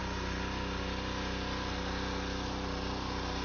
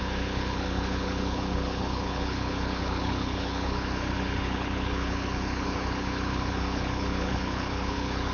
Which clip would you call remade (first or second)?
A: second